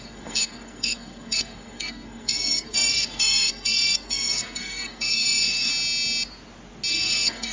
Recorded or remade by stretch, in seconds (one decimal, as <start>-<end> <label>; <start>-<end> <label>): 0.0-5.7 remade; 5.7-6.9 recorded; 6.9-7.5 remade